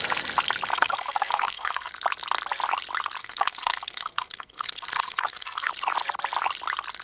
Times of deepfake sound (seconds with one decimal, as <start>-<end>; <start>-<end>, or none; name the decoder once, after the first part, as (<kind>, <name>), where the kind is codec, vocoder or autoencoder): 0.7-1.9 (codec, SNAC); 3.2-5.7